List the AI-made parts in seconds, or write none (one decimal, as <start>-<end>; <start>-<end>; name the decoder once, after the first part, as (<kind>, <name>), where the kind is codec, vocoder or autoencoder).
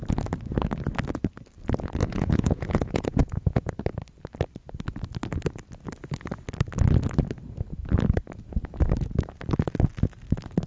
2.0-3.7 (vocoder, Vocos)